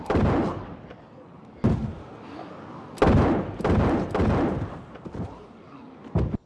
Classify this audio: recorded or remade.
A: recorded